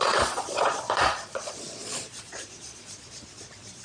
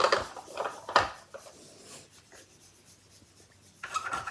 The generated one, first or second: first